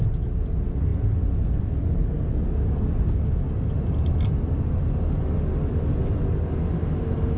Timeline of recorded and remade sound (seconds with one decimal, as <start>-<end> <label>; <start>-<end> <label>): 0.0-7.4 recorded